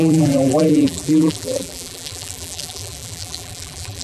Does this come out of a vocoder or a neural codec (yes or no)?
yes